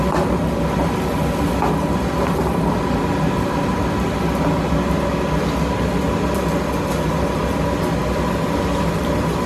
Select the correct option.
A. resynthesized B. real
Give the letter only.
B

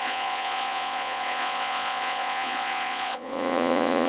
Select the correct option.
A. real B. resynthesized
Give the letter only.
B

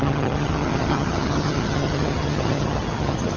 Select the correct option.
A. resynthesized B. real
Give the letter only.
A